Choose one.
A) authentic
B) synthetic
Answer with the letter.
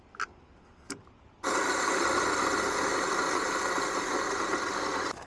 A